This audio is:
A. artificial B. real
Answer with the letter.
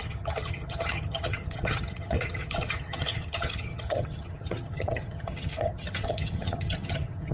A